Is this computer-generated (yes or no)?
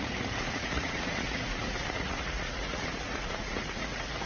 yes